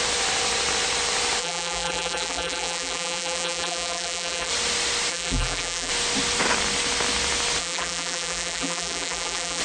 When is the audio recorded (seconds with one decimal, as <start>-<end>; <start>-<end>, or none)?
0.0-1.4; 4.5-5.1; 5.9-7.6